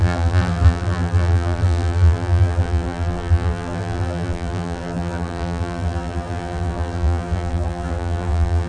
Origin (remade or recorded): remade